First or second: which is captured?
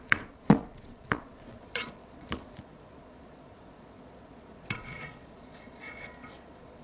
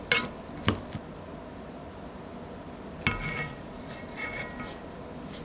second